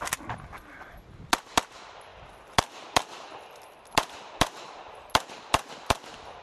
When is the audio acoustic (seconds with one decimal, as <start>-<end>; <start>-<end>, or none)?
0.0-6.4